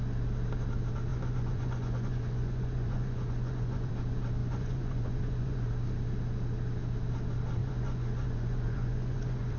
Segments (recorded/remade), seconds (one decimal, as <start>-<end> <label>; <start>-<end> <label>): 0.0-1.1 recorded; 1.1-3.9 remade; 3.9-4.4 recorded; 4.4-5.7 remade; 5.7-7.6 recorded; 7.6-9.6 remade